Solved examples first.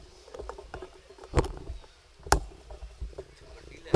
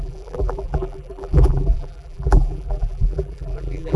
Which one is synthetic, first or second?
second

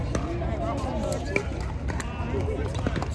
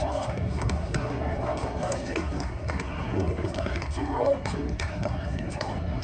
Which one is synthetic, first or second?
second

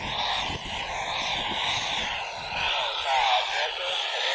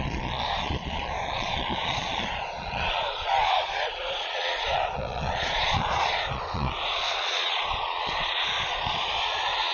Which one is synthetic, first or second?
second